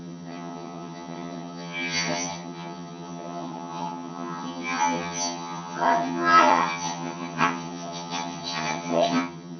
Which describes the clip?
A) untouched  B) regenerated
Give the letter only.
B